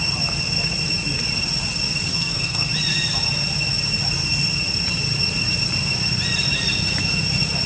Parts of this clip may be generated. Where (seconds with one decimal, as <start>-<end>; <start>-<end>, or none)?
2.1-2.7